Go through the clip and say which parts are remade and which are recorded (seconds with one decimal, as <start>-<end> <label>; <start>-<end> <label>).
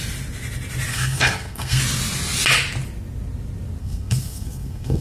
0.0-0.9 recorded; 0.9-1.8 remade; 1.8-3.8 recorded; 3.8-5.0 remade